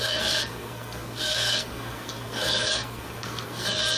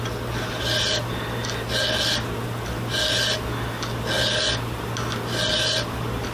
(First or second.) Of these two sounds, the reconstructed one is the first